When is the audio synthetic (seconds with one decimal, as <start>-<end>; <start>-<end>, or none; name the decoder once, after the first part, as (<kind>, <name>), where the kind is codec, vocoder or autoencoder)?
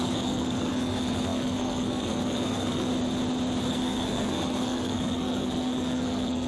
0.0-2.9 (codec, SNAC); 3.7-6.5